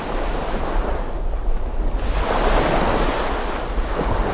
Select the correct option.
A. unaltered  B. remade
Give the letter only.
A